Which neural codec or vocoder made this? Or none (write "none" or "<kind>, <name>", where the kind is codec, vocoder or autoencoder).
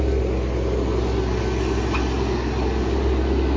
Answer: none